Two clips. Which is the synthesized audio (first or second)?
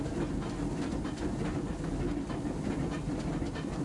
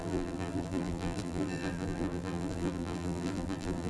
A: second